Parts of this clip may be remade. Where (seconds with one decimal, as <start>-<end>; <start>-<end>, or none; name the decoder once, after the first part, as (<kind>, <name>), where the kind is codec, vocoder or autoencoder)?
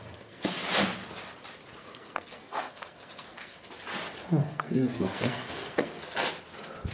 0.0-0.6 (codec, SNAC); 1.8-3.7; 4.4-6.3